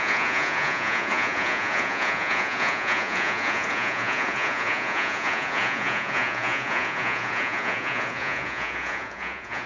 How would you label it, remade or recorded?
remade